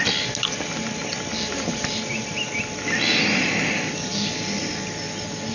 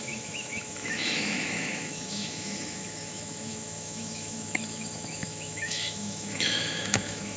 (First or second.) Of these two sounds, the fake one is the second